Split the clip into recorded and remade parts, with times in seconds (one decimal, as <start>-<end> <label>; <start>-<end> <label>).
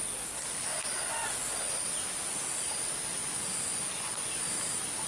0.0-0.7 recorded; 0.7-1.3 remade; 1.3-3.2 recorded; 3.2-4.3 remade; 4.3-5.1 recorded